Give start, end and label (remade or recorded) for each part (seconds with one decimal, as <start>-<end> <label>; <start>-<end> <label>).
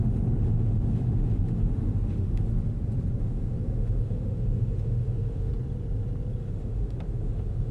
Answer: 0.0-2.5 remade; 2.5-3.2 recorded; 3.2-5.5 remade; 5.5-6.4 recorded; 6.4-7.7 remade